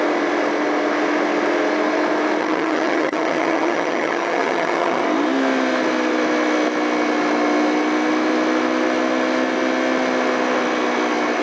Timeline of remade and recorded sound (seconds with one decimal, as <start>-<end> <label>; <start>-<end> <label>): 0.0-2.4 recorded; 2.4-5.0 remade; 5.0-11.4 recorded